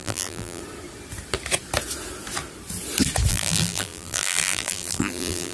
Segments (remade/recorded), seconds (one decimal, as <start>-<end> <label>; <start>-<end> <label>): 0.0-0.6 remade; 0.6-3.3 recorded; 3.3-5.5 remade